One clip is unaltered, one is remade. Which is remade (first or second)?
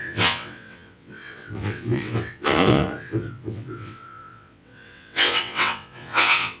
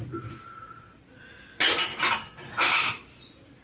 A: first